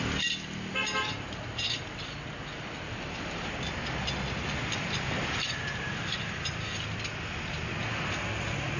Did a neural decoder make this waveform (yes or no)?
no